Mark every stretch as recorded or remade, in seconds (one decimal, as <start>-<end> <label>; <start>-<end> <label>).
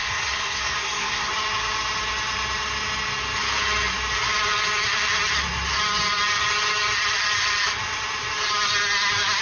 0.0-1.3 remade; 1.3-9.4 recorded